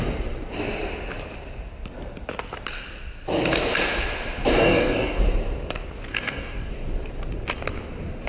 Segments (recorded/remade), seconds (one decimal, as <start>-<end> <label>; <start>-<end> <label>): 0.0-4.5 recorded; 4.5-5.2 remade; 5.2-6.1 recorded; 6.1-6.7 remade; 6.7-8.3 recorded